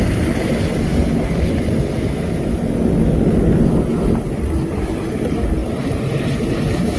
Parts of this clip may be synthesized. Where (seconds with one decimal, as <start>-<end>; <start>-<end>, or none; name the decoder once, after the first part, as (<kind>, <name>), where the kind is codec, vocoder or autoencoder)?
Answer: none